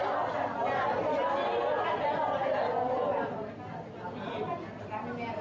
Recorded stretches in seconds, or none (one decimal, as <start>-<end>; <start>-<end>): 0.0-5.4